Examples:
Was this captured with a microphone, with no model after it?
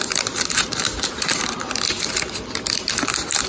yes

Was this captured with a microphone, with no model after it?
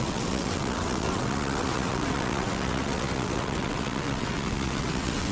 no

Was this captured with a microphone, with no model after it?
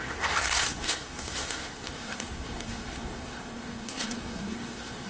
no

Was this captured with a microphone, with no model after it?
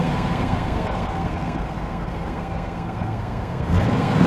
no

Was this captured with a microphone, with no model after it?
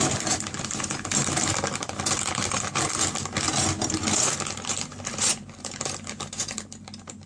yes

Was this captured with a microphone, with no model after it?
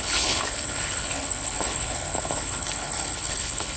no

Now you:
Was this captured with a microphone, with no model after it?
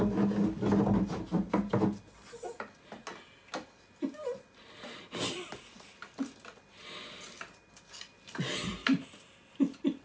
yes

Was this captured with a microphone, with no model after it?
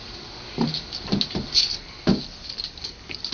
yes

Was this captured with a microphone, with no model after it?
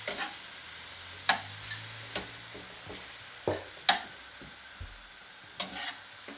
yes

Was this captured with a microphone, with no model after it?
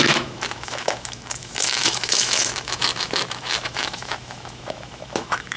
no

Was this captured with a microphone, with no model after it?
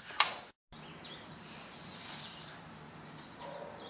yes